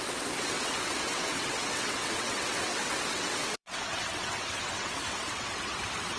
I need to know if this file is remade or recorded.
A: remade